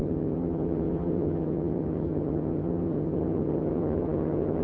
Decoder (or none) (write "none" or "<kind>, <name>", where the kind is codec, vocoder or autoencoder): vocoder, HiFi-GAN